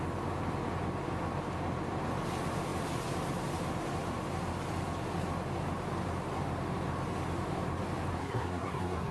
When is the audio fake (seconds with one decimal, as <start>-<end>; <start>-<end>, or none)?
8.2-9.1